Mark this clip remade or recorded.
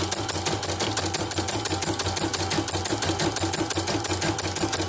recorded